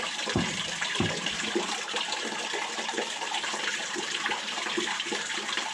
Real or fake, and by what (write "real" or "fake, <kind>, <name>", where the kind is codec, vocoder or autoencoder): fake, vocoder, BigVGAN v2